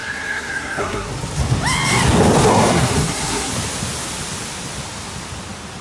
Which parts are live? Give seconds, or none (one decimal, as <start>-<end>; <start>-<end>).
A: 1.1-2.5; 3.5-5.8